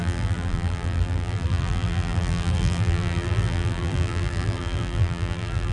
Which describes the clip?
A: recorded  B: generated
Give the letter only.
B